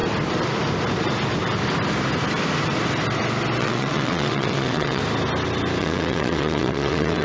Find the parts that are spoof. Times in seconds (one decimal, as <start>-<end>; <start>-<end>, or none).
3.6-5.0; 5.8-7.2